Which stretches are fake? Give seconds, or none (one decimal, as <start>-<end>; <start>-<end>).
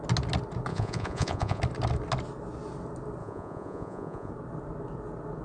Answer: 0.7-1.6; 3.2-4.3